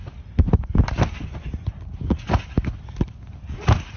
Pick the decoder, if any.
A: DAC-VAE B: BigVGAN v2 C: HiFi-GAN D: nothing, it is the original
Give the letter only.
D